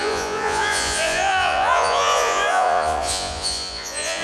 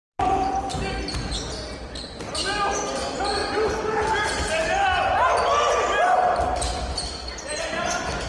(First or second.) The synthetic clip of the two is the first